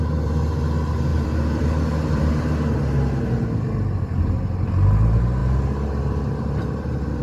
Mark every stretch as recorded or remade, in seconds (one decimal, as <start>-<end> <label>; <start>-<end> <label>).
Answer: 0.0-1.1 recorded; 1.1-2.3 remade; 2.3-7.2 recorded